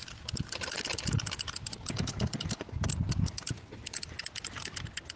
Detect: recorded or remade recorded